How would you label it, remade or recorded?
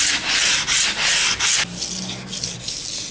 recorded